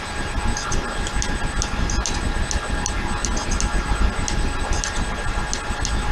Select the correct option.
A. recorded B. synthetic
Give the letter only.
A